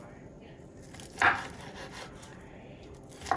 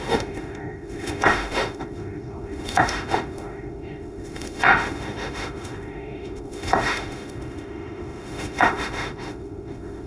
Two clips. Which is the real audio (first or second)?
first